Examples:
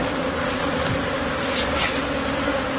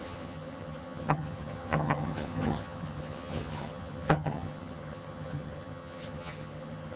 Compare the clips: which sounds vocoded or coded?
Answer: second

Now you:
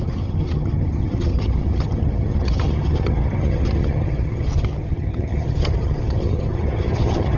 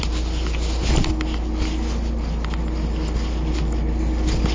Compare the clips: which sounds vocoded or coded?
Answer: first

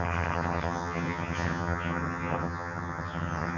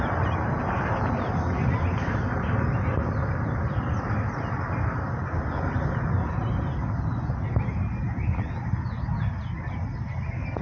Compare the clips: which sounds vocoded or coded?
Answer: first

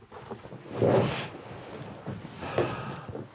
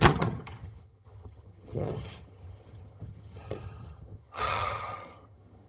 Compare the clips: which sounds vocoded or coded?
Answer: second